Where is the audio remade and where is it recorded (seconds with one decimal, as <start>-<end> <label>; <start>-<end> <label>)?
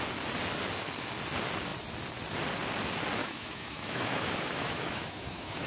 0.0-3.2 recorded; 3.2-5.7 remade